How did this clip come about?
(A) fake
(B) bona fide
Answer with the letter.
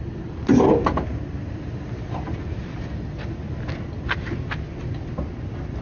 B